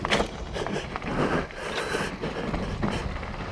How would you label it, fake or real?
real